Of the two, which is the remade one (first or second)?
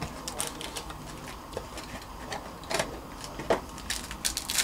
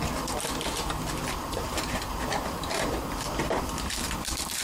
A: second